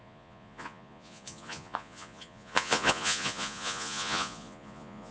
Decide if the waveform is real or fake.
fake